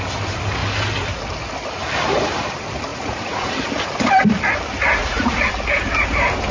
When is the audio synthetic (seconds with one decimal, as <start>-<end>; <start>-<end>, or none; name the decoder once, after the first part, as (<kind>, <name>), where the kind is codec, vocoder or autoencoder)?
2.9-3.6 (vocoder, Vocos); 5.0-5.5